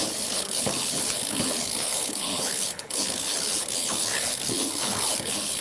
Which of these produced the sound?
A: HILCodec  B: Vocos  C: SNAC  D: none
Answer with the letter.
A